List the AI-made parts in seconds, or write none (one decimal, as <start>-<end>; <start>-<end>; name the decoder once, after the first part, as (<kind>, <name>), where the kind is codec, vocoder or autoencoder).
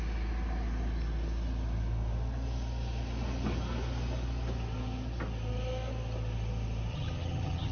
6.9-7.7 (vocoder, HiFi-GAN)